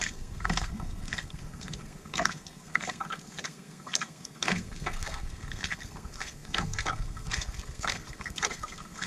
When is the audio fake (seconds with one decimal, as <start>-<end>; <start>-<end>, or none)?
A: 0.0-9.1